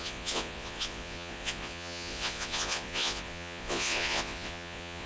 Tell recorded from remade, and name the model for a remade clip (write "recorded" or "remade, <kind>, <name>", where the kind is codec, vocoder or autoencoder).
remade, vocoder, Vocos